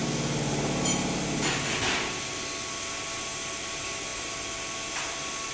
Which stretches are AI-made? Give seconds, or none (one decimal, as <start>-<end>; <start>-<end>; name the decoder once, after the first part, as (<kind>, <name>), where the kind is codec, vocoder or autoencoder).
none